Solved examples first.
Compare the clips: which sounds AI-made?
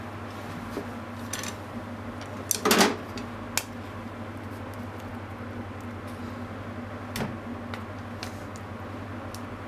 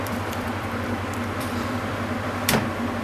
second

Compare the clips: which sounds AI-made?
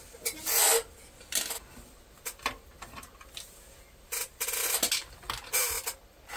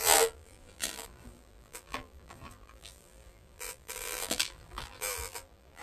second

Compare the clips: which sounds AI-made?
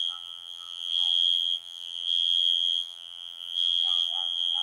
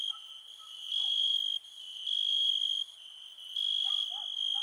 first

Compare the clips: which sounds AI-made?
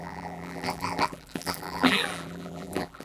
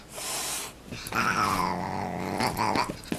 first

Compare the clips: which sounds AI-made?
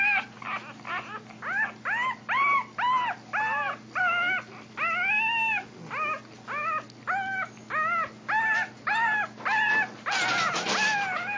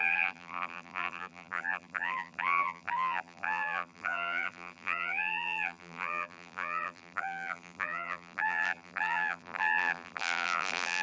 second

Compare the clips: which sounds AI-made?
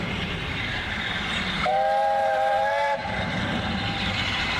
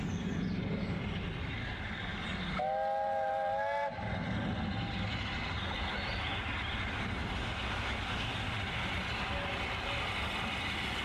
first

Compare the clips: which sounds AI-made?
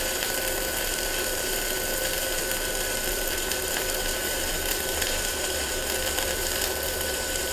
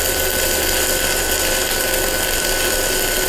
first